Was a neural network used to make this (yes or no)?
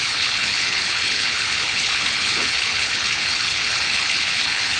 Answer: yes